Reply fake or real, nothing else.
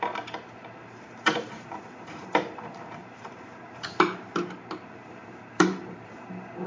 fake